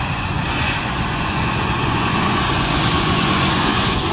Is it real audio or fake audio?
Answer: fake